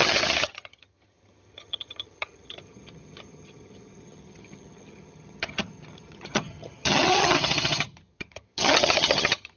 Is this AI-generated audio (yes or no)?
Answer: yes